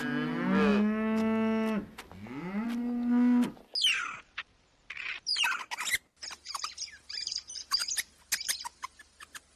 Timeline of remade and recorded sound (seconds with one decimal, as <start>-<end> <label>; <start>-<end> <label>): 0.0-9.6 recorded